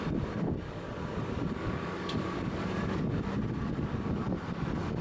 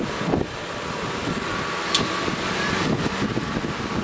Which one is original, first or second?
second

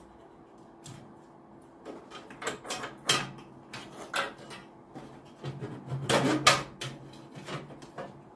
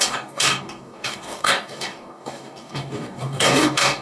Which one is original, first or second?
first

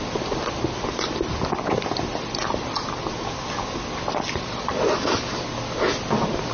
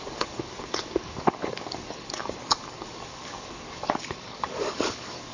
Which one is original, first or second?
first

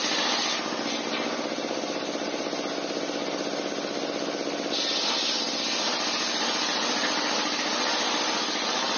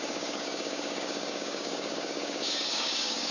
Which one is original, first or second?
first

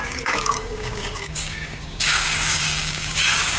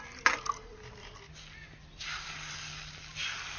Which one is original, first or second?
second